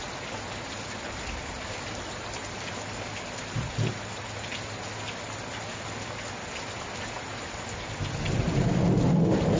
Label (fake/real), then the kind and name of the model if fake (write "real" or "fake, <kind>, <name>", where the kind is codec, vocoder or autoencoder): real